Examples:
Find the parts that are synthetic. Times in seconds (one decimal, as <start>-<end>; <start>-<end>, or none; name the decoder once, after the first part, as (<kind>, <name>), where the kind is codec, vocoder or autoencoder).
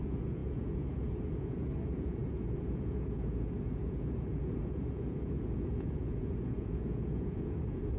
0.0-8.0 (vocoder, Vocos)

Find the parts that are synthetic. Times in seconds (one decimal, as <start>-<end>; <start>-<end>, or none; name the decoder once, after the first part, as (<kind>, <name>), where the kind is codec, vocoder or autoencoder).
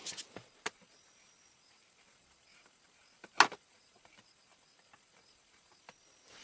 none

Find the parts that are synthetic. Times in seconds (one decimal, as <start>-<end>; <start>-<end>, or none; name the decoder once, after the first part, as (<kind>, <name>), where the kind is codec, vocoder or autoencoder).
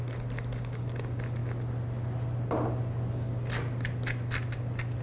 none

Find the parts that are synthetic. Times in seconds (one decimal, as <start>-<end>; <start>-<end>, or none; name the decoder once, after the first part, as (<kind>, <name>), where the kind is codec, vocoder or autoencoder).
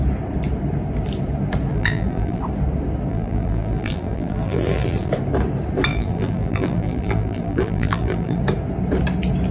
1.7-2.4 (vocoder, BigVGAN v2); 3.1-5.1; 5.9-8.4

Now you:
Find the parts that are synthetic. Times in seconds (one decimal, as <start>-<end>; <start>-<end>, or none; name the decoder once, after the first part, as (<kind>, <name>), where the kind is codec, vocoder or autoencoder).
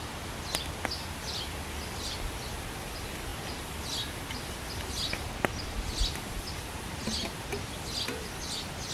none